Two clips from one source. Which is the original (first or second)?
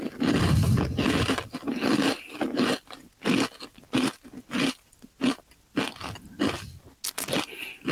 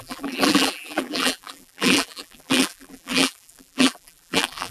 first